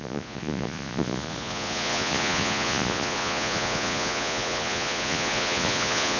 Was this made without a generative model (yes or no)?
no